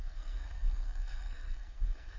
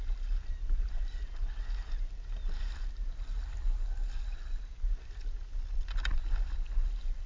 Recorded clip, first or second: second